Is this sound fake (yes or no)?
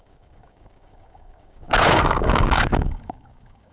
yes